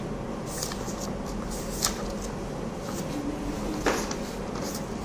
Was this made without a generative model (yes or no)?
yes